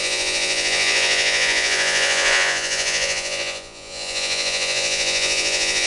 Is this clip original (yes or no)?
no